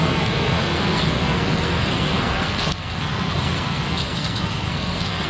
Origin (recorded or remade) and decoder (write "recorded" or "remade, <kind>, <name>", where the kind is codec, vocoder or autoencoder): remade, codec, SNAC